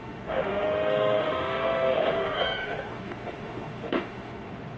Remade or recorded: remade